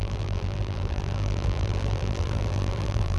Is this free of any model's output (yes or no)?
no